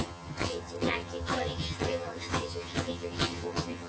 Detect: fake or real fake